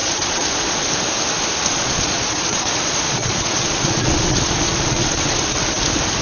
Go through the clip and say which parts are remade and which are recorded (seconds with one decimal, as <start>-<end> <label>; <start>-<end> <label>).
0.0-0.9 remade; 0.9-1.7 recorded; 1.7-5.4 remade; 5.4-6.2 recorded